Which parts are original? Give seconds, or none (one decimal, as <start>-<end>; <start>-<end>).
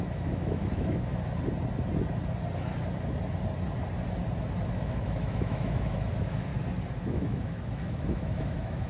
1.1-4.7; 6.5-7.0